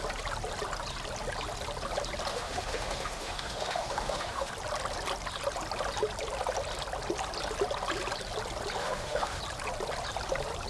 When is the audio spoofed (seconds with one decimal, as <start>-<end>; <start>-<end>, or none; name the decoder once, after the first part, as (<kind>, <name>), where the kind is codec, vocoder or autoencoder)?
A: 2.3-4.5 (autoencoder, DAC-VAE); 8.8-9.4